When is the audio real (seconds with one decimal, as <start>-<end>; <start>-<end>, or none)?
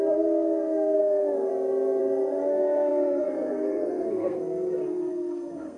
1.5-2.0